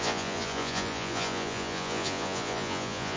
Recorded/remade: remade